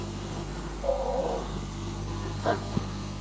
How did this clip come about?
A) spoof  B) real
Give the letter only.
A